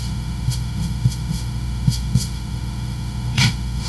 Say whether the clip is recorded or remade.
remade